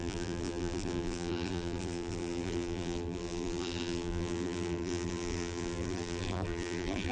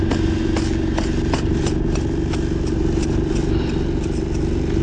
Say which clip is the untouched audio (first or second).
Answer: second